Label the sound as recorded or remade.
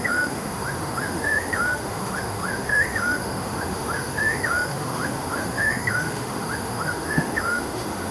remade